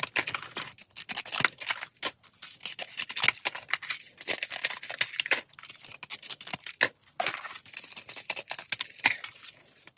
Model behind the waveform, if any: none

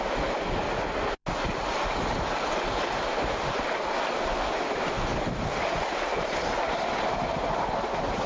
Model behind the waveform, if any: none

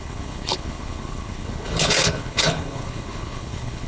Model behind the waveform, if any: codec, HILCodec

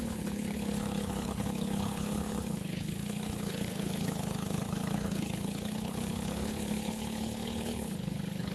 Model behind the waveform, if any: codec, HILCodec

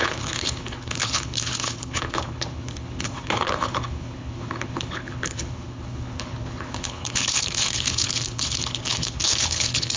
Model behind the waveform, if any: codec, HILCodec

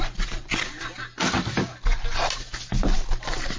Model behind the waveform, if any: none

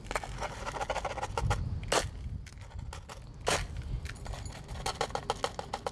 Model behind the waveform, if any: none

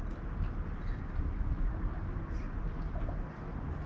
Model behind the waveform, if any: none